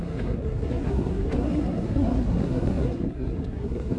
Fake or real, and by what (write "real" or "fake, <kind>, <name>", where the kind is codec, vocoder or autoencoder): fake, codec, SNAC